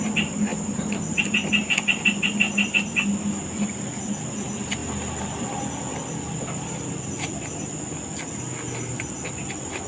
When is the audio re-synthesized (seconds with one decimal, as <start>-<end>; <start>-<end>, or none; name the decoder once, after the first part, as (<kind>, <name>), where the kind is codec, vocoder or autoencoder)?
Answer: none